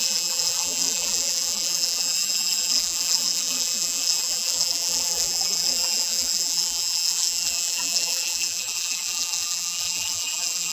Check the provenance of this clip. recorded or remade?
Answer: remade